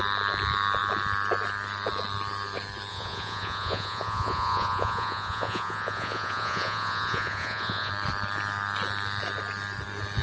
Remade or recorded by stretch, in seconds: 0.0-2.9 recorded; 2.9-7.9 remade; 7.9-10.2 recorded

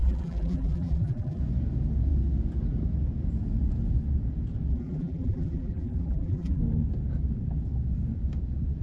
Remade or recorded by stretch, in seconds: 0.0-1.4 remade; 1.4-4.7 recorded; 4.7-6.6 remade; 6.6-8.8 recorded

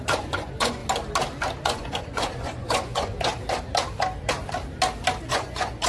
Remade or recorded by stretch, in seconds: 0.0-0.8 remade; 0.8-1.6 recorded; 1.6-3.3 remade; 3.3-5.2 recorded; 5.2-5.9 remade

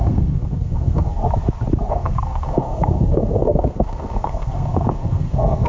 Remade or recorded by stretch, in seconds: 0.0-1.2 remade; 1.2-1.9 recorded; 1.9-5.7 remade

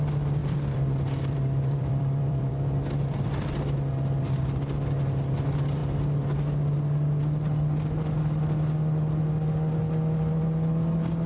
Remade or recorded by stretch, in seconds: 0.0-0.4 recorded; 0.4-2.5 remade; 2.5-11.3 recorded

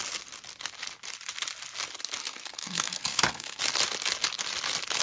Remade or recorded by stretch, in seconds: 0.0-2.2 recorded; 2.2-3.6 remade; 3.6-5.0 recorded

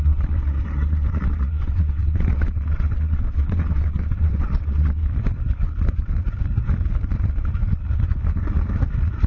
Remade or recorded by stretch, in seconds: 0.0-5.0 remade; 5.0-9.3 recorded